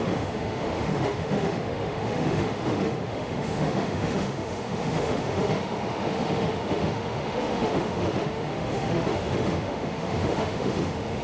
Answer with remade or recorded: remade